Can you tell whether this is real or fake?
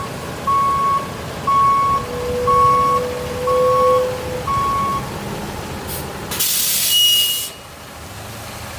real